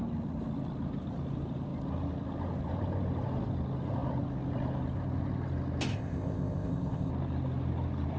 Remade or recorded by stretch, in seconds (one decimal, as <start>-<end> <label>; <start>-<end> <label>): 0.0-5.9 recorded; 5.9-7.1 remade; 7.1-8.2 recorded